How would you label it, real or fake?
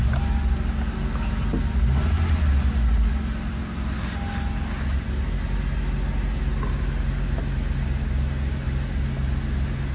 real